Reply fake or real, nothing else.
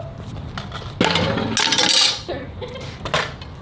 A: real